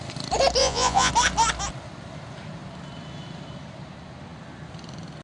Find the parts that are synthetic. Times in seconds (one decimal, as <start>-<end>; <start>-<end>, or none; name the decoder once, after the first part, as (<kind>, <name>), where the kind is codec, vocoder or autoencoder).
0.6-1.1 (vocoder, Vocos)